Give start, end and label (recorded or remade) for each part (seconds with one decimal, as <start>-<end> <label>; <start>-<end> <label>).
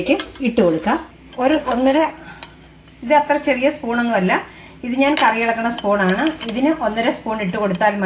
0.0-1.4 recorded; 1.4-2.1 remade; 2.1-8.1 recorded